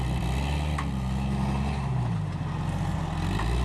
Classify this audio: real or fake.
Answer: real